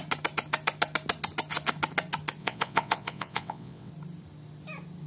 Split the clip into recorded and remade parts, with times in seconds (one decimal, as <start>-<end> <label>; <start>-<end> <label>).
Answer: 0.0-2.4 recorded; 2.4-3.9 remade; 3.9-5.1 recorded